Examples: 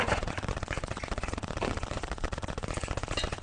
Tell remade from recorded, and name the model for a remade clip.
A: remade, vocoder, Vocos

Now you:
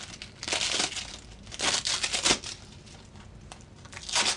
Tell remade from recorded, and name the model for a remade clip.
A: remade, vocoder, BigVGAN v2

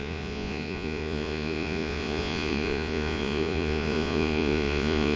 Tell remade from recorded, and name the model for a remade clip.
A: remade, vocoder, Vocos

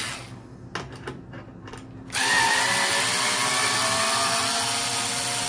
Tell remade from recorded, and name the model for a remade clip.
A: recorded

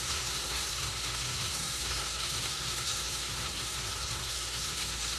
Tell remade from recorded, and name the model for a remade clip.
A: remade, codec, SNAC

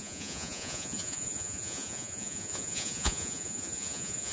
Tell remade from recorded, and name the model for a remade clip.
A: remade, vocoder, Vocos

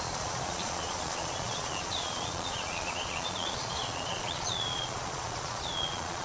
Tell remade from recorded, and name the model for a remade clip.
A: remade, vocoder, Vocos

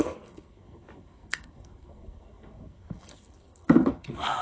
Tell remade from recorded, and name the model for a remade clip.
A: remade, codec, SNAC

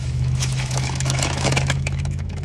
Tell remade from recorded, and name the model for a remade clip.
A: remade, autoencoder, DAC-VAE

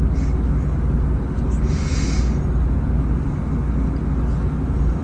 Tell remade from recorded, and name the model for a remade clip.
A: recorded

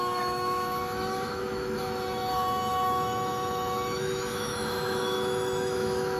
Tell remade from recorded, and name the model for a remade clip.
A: remade, autoencoder, DAC-VAE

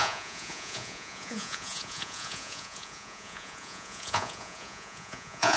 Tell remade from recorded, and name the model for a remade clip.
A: remade, vocoder, Vocos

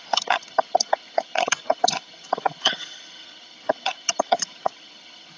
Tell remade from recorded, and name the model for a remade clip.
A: remade, vocoder, HiFi-GAN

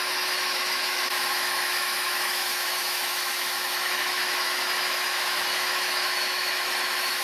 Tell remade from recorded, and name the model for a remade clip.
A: remade, autoencoder, DAC-VAE